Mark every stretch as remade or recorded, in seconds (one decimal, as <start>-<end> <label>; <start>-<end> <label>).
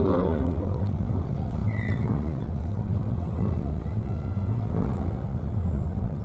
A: 0.0-6.2 remade